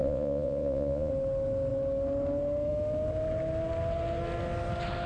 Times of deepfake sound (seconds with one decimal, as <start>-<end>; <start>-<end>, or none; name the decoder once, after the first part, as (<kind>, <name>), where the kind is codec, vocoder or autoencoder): 0.0-1.1 (vocoder, Vocos)